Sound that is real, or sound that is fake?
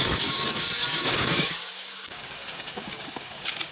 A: fake